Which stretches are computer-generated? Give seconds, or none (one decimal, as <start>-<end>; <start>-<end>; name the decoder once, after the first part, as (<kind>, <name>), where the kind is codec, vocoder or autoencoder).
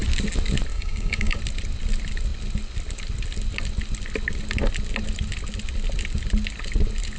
0.7-1.4 (codec, DAC)